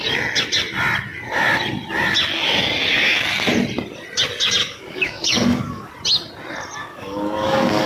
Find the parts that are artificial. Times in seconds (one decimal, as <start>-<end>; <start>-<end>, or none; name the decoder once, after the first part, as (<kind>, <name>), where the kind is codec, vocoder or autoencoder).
4.6-5.9 (codec, DAC); 6.8-7.9